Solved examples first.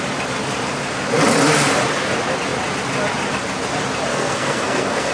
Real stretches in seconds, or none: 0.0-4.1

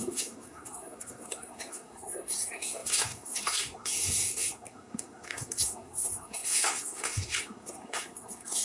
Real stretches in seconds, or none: none

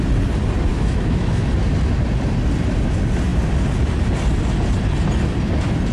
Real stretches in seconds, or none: 0.0-0.7; 1.5-5.9

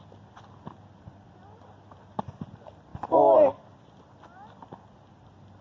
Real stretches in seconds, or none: 0.0-5.6

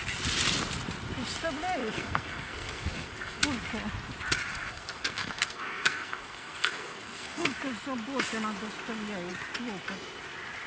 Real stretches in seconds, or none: 0.0-1.8; 3.4-4.5; 7.6-10.7

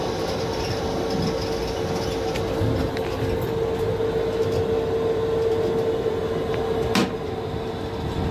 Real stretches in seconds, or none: 0.8-7.0; 7.7-8.3

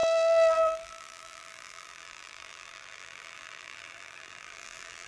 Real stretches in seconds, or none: none

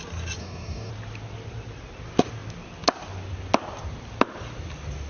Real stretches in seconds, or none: 0.0-0.4; 0.9-5.1